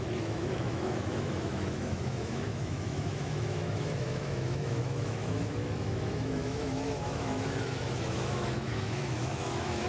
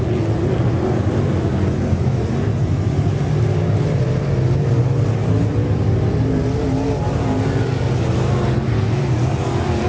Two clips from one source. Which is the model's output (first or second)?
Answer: first